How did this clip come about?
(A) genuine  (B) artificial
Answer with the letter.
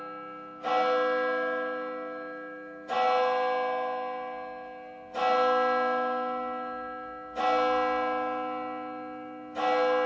A